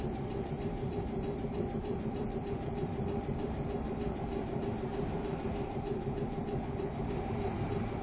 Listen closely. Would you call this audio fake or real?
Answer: fake